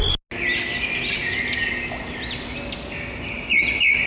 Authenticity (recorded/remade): recorded